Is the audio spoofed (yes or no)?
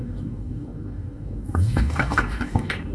yes